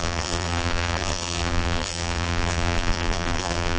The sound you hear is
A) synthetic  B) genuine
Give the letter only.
A